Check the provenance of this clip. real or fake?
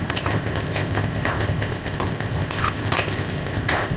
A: fake